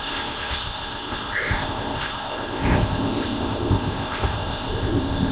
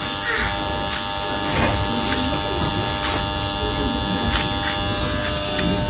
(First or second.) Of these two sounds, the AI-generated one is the first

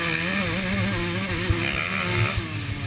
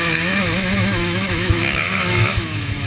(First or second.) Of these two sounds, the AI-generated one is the second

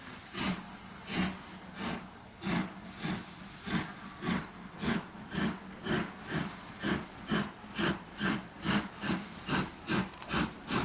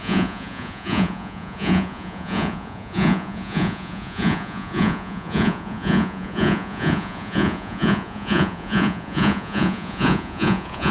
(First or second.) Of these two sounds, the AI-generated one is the second